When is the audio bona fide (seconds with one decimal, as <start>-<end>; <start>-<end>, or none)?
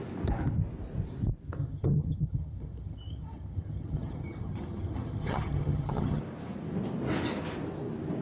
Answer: 0.0-1.6; 6.2-8.2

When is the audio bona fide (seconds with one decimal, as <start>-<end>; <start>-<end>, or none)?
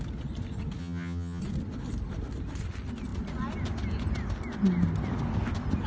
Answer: 0.0-0.8; 1.4-5.9